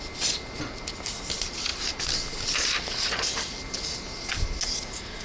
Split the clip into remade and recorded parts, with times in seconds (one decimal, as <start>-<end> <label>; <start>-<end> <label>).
0.0-5.2 recorded